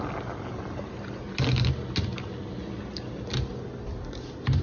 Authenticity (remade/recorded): recorded